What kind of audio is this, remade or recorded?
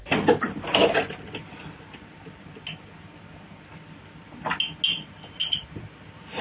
recorded